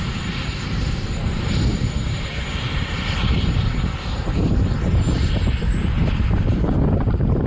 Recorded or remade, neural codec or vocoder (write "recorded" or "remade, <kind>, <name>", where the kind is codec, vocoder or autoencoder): remade, vocoder, BigVGAN v2